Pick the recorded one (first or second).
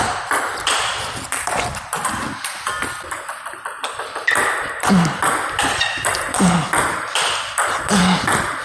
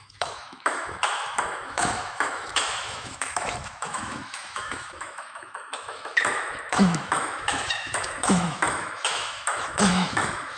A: first